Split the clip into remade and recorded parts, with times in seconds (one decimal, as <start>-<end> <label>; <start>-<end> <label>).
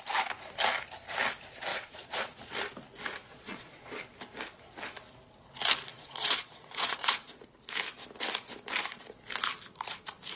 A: 0.0-1.7 recorded; 1.7-2.5 remade; 2.5-3.2 recorded; 3.2-3.9 remade; 3.9-5.9 recorded; 5.9-7.3 remade; 7.3-10.4 recorded